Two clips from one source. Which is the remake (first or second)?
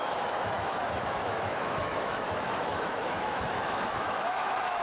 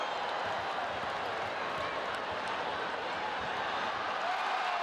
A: first